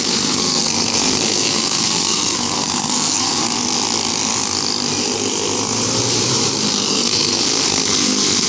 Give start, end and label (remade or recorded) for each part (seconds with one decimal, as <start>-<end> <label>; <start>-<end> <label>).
0.0-3.4 remade; 3.4-6.9 recorded; 6.9-8.5 remade